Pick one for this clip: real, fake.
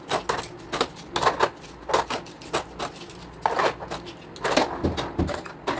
real